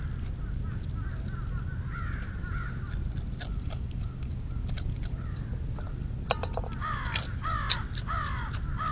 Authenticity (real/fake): real